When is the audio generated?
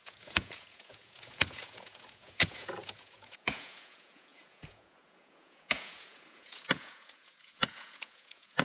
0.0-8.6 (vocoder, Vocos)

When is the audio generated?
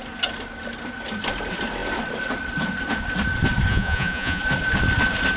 3.7-4.4 (vocoder, Vocos)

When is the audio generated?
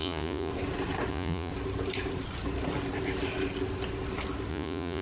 0.0-0.5 (vocoder, Vocos); 1.1-1.5; 4.5-5.0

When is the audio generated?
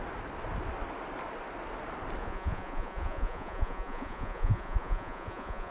2.2-5.7 (vocoder, Vocos)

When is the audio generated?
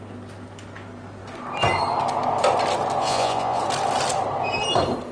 3.0-3.6 (vocoder, Vocos)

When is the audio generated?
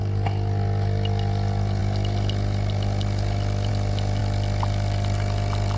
none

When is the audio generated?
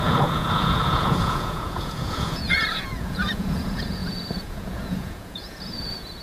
0.0-6.2 (vocoder, Vocos)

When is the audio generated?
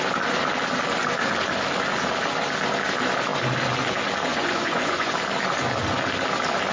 4.3-5.1 (vocoder, Vocos)